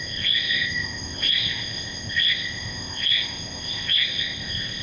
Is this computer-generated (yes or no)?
yes